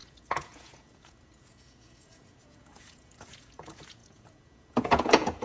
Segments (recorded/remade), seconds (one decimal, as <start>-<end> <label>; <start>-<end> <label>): 0.0-5.4 remade